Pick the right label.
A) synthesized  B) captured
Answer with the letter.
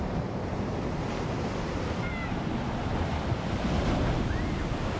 B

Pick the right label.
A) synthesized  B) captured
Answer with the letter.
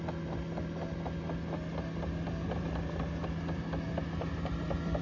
B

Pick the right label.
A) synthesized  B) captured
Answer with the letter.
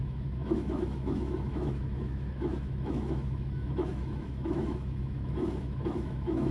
A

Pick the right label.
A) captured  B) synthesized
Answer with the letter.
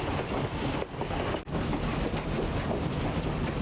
A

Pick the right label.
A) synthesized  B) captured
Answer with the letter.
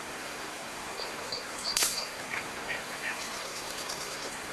A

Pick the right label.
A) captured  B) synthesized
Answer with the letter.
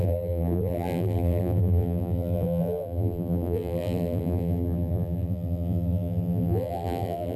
B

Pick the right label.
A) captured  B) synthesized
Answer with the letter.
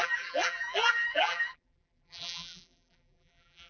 B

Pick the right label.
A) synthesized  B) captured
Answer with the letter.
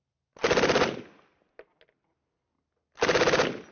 B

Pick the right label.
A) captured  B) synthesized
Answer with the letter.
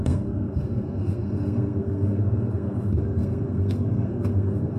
B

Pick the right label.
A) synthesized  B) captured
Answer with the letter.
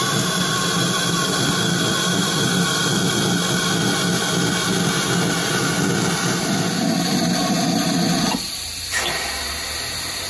B